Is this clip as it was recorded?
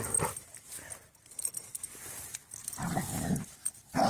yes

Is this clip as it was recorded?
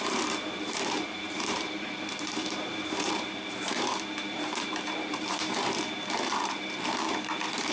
no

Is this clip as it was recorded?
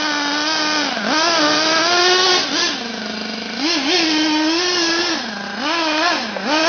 yes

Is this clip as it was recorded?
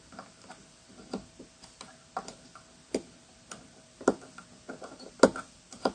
yes